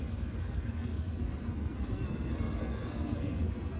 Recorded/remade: remade